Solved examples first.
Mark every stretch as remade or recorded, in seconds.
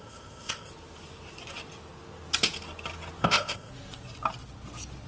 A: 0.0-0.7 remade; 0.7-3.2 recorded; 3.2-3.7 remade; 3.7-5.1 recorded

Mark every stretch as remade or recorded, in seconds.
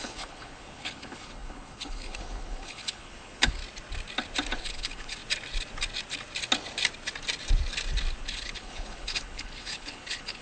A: 0.0-3.6 remade; 3.6-4.6 recorded; 4.6-5.2 remade; 5.2-8.2 recorded; 8.2-10.4 remade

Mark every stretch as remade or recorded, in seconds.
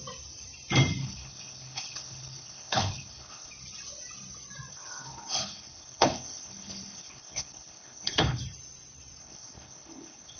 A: 0.0-1.0 recorded; 1.0-3.5 remade; 3.5-4.7 recorded; 4.7-8.4 remade; 8.4-9.2 recorded; 9.2-10.4 remade